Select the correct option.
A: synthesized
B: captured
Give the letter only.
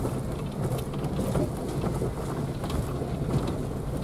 B